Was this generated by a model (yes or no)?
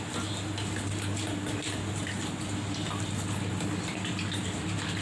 no